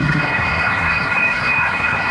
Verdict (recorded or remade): remade